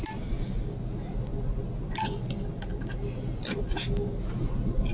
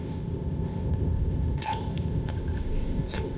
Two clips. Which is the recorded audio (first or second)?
first